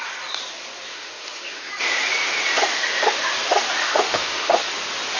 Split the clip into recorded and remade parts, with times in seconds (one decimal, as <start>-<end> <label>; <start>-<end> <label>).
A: 0.0-0.9 recorded; 0.9-1.7 remade; 1.7-2.7 recorded; 2.7-3.3 remade; 3.3-3.8 recorded; 3.8-4.6 remade; 4.6-5.2 recorded